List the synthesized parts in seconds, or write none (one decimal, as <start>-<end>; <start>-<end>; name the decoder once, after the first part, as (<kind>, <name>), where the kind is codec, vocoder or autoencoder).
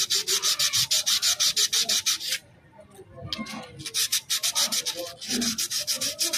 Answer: none